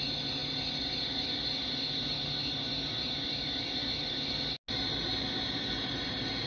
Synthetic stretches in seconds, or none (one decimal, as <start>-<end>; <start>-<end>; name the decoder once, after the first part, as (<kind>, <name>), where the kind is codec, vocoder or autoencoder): none